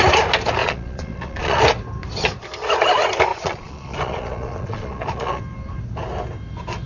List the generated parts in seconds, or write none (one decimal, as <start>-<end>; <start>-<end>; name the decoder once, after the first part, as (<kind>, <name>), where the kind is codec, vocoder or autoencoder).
0.6-1.6 (vocoder, Vocos); 3.3-5.4